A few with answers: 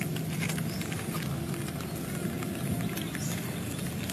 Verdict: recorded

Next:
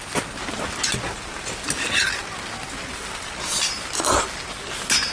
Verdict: recorded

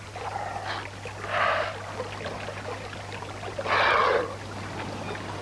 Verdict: recorded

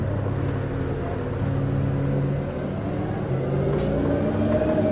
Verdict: recorded